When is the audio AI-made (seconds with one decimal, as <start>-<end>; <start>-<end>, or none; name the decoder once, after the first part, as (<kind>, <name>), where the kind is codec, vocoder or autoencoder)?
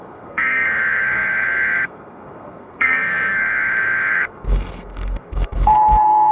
0.0-6.3 (codec, SNAC)